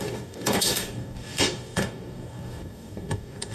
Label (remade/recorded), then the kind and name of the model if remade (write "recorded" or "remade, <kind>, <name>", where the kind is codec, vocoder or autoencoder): remade, codec, DAC